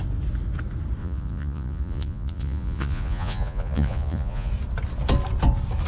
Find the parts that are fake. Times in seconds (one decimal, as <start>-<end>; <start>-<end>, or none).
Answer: 1.0-4.5